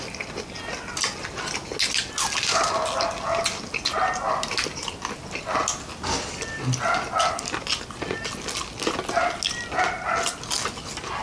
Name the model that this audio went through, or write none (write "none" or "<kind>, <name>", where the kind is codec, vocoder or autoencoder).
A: none